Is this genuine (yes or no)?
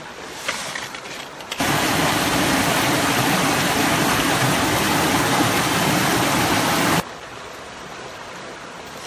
yes